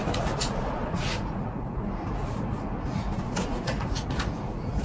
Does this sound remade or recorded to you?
remade